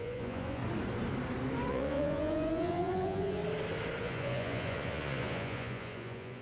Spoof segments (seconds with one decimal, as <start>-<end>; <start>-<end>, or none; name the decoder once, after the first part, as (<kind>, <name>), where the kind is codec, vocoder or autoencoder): 0.0-0.6 (vocoder, Vocos); 1.7-3.4; 4.0-6.4